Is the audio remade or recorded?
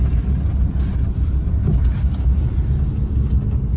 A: recorded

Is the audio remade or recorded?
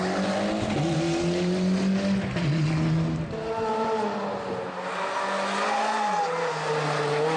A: recorded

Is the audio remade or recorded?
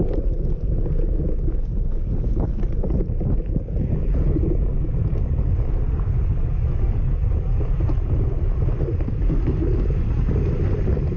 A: recorded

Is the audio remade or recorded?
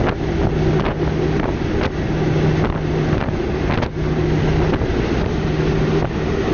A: recorded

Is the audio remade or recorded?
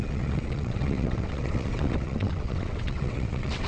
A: remade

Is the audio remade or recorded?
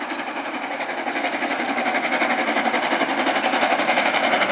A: recorded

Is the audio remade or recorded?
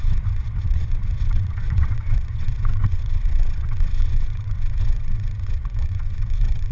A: remade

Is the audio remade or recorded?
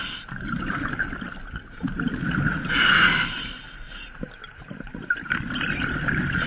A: recorded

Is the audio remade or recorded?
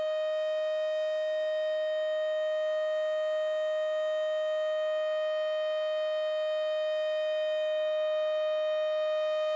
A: recorded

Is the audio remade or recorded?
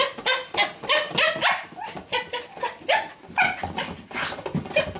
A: recorded